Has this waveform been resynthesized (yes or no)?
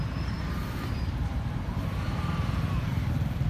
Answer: yes